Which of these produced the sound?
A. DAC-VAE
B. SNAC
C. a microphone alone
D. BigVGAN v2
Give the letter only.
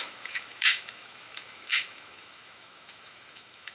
A